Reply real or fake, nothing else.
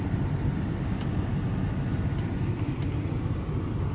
real